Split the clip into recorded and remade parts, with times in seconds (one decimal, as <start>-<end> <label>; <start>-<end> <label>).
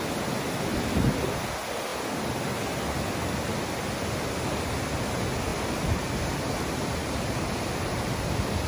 0.0-8.7 recorded